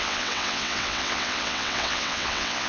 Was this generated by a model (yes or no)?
yes